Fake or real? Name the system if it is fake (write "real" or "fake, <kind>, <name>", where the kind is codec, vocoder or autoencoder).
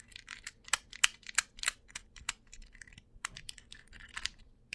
fake, vocoder, BigVGAN v2